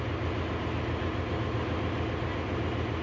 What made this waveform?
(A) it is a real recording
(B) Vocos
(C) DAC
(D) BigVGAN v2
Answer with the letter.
A